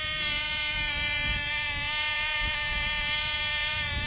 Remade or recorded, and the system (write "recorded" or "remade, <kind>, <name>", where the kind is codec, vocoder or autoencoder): remade, vocoder, Vocos